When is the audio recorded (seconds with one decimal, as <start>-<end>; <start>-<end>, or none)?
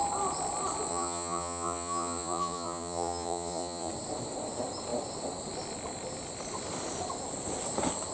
0.0-0.9; 3.9-8.1